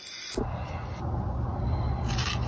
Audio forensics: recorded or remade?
recorded